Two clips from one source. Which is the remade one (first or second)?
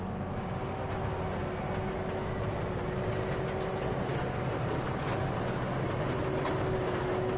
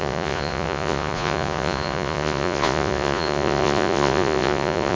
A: second